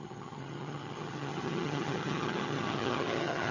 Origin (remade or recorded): remade